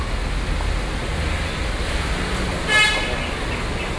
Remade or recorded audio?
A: recorded